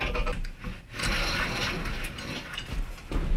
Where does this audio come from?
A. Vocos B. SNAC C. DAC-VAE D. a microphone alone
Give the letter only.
D